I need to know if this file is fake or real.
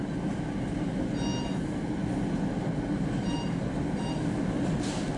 real